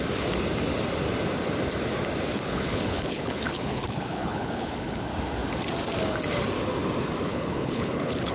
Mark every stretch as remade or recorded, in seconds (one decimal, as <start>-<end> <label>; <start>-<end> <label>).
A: 0.0-2.3 recorded; 2.3-5.0 remade; 5.0-7.3 recorded; 7.3-8.3 remade